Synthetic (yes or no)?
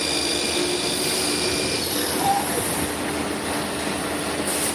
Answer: no